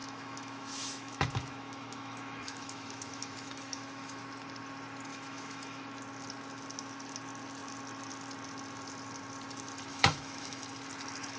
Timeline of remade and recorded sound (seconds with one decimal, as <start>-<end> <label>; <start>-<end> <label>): 0.0-4.2 remade; 4.2-5.1 recorded; 5.1-5.8 remade; 5.8-9.9 recorded; 9.9-10.6 remade; 10.6-11.4 recorded